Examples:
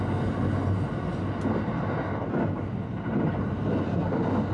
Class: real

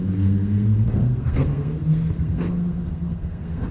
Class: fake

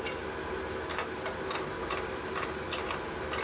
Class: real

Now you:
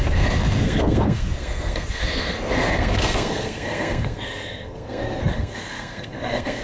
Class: fake